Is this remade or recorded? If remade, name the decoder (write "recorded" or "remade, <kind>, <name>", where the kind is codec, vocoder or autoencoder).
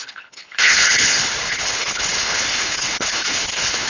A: remade, codec, HILCodec